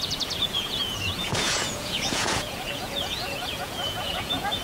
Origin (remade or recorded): remade